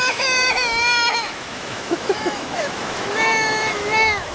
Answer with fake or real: fake